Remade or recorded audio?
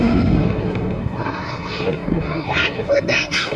remade